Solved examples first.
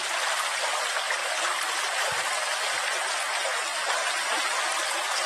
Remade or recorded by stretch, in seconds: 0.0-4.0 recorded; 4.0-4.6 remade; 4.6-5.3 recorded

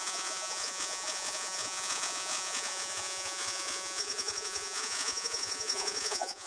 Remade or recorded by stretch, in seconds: 0.0-6.5 remade

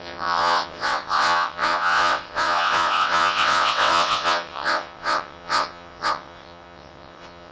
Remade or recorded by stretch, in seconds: 0.0-7.5 remade

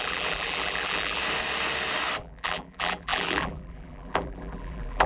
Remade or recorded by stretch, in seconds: 0.0-1.2 remade; 1.2-2.2 recorded; 2.2-5.1 remade